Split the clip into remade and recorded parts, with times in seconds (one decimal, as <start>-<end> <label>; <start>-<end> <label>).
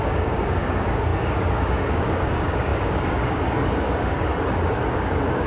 0.0-4.3 remade; 4.3-4.9 recorded; 4.9-5.5 remade